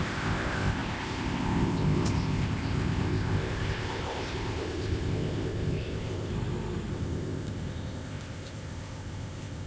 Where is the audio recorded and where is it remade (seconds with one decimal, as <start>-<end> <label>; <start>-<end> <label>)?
0.0-6.3 remade; 6.3-6.9 recorded; 6.9-9.7 remade